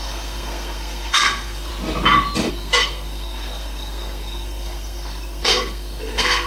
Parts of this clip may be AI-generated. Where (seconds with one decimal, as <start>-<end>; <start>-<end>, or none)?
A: 0.0-1.7; 2.5-6.5